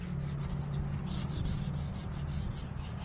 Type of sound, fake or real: real